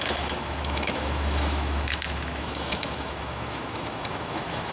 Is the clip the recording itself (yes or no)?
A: no